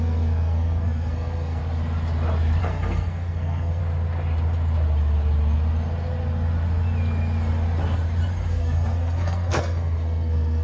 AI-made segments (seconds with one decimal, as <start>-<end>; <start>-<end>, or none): 0.0-1.6; 2.6-3.8; 8.5-10.6